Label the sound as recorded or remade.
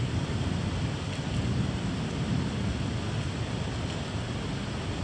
recorded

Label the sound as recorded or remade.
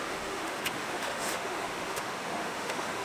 remade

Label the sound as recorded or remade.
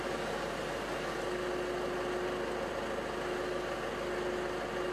recorded